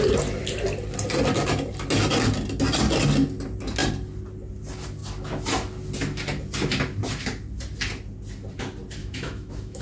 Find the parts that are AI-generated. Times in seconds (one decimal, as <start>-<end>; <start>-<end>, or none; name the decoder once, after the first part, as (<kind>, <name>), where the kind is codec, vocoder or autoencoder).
9.0-9.8 (autoencoder, DAC-VAE)